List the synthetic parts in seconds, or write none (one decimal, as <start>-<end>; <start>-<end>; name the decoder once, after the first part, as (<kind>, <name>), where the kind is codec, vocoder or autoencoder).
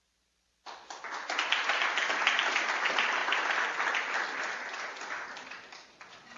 none